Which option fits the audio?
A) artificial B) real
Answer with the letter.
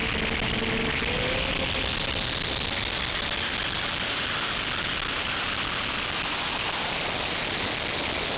B